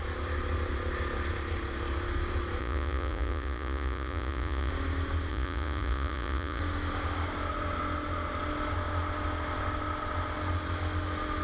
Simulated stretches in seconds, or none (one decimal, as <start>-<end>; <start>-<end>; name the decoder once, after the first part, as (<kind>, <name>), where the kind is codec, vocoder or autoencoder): 2.6-4.7 (vocoder, Vocos); 5.3-6.6